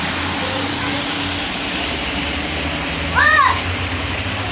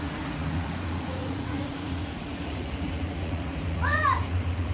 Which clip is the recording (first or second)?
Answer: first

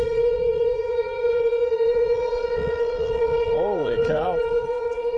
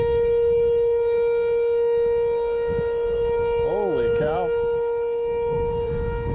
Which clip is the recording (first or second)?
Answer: second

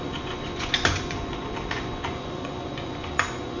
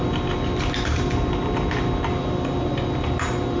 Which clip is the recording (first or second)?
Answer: second